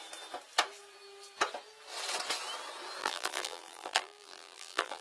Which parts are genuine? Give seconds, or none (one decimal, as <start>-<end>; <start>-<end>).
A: 0.0-3.0